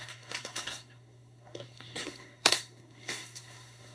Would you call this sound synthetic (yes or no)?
yes